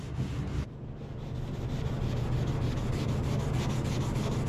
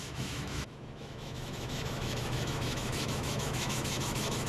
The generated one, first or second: second